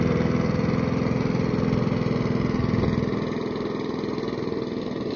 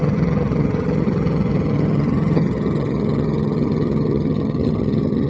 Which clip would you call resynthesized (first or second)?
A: second